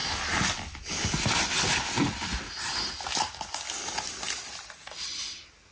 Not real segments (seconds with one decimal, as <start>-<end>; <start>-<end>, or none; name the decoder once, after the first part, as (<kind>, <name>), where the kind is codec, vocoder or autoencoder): none